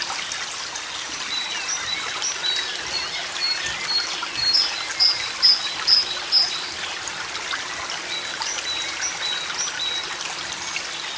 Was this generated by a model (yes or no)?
no